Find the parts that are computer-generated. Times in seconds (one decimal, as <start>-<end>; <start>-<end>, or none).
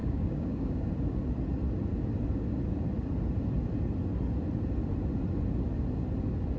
0.0-0.9